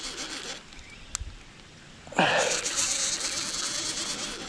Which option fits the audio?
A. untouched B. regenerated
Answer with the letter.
A